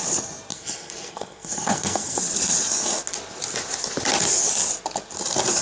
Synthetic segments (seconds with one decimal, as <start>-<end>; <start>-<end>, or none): 0.5-2.2